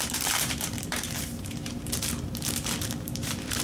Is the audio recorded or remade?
remade